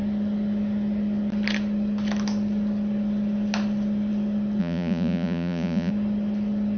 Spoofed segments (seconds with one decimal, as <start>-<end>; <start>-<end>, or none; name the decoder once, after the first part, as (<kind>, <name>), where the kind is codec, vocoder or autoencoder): 4.6-5.9 (vocoder, Vocos)